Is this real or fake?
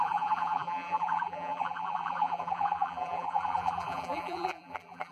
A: fake